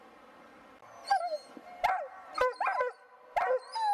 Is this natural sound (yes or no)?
yes